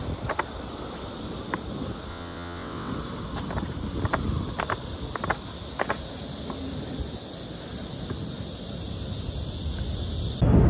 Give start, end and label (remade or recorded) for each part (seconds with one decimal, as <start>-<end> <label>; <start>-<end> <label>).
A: 0.0-2.1 recorded; 2.1-2.9 remade; 2.9-10.7 recorded